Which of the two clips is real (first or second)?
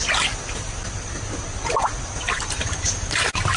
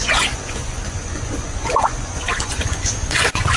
first